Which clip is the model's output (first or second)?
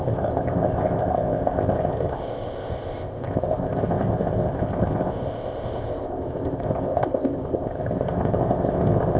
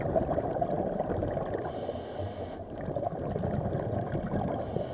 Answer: first